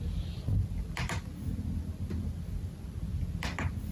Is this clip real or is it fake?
real